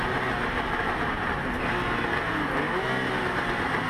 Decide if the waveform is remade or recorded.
recorded